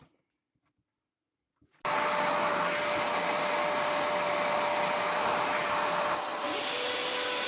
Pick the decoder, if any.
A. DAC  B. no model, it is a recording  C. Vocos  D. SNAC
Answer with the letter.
B